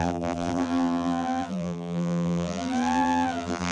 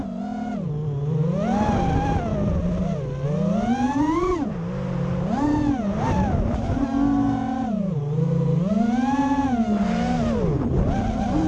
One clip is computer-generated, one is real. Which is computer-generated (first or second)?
first